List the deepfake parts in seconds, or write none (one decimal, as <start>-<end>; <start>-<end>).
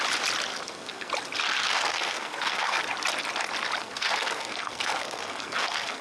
0.5-1.1; 1.6-2.8; 3.8-6.0